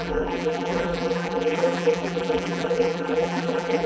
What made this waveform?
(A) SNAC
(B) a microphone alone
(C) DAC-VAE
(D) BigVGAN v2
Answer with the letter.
D